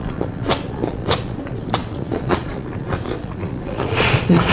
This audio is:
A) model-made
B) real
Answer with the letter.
A